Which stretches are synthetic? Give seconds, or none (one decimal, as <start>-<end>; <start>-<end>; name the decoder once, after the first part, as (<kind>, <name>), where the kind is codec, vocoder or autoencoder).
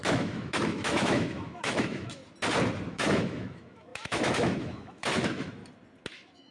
0.0-2.2 (autoencoder, DAC-VAE); 2.9-5.6; 6.1-6.5